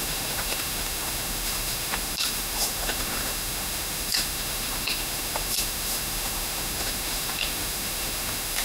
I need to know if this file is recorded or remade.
remade